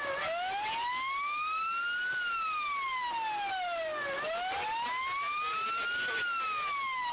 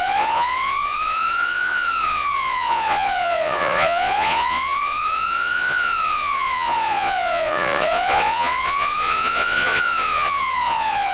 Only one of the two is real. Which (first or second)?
first